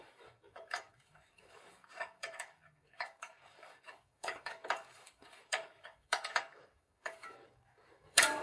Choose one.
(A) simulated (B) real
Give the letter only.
A